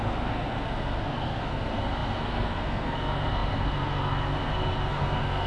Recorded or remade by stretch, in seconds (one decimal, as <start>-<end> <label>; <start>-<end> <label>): 0.0-5.5 remade